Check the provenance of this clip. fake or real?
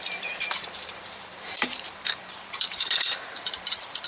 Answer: fake